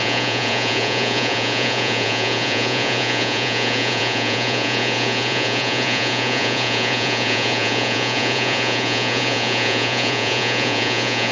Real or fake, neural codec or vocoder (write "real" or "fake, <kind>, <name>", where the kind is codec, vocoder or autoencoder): fake, vocoder, Vocos